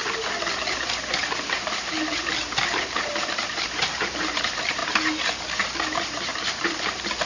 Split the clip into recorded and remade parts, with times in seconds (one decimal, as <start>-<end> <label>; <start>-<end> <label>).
0.0-1.2 recorded; 1.2-7.3 remade